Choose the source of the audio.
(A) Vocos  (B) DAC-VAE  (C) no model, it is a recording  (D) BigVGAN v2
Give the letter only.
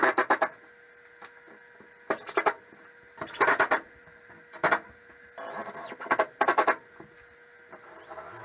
C